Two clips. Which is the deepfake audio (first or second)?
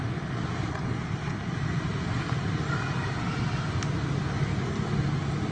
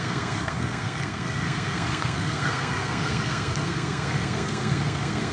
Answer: second